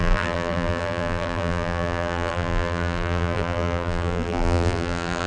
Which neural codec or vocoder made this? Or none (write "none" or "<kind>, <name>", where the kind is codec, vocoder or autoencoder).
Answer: vocoder, BigVGAN v2